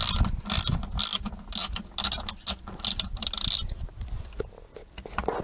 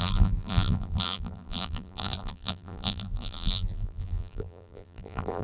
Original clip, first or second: first